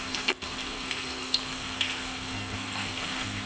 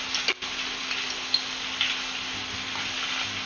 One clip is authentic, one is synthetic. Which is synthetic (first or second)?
first